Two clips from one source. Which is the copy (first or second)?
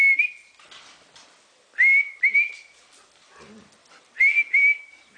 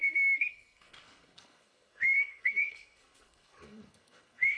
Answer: second